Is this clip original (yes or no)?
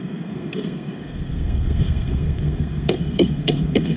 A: no